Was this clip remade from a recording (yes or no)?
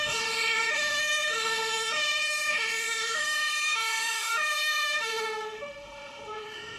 yes